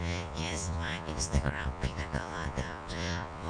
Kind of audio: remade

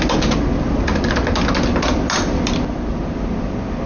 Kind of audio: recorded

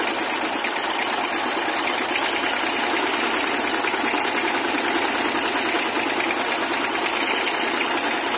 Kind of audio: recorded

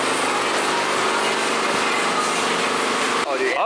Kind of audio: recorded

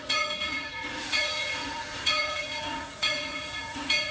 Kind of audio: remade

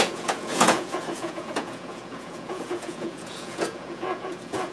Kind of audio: remade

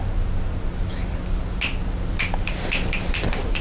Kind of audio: recorded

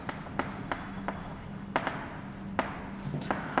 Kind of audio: recorded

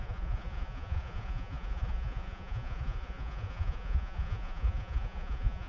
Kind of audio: remade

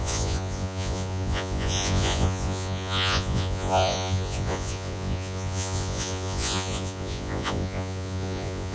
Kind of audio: remade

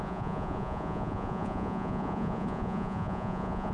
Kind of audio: remade